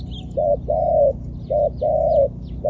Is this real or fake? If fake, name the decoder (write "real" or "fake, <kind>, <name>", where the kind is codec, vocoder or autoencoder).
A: real